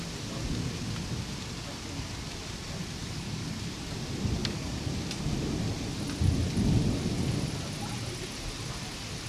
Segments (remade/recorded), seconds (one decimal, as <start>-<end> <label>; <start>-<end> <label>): 0.0-3.0 recorded; 3.0-3.5 remade; 3.5-4.4 recorded; 4.4-4.9 remade; 4.9-9.3 recorded